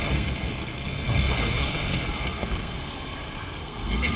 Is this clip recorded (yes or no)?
no